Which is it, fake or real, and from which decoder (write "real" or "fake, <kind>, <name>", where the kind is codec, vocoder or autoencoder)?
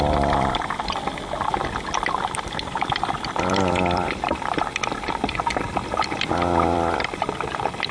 fake, vocoder, BigVGAN v2